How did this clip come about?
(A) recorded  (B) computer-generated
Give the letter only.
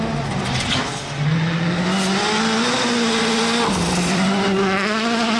A